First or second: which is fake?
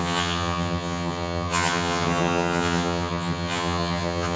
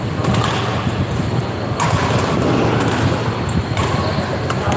first